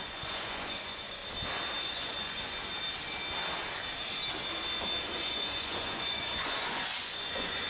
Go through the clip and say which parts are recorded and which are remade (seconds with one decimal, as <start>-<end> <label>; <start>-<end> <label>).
0.0-1.2 remade; 1.2-1.8 recorded; 1.8-2.6 remade; 2.6-5.1 recorded; 5.1-7.7 remade